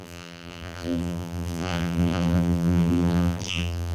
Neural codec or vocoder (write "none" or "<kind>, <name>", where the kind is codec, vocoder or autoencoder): vocoder, BigVGAN v2